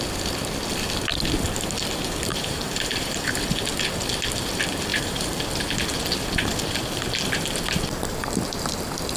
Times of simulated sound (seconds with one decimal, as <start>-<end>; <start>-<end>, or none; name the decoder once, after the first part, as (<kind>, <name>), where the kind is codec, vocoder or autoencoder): 2.3-3.4 (vocoder, BigVGAN v2); 4.9-5.4